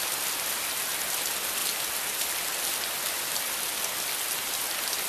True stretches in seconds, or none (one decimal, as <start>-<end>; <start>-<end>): 0.0-5.1